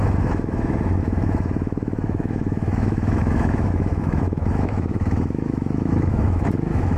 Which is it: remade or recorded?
remade